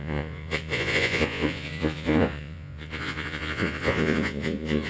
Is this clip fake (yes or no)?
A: yes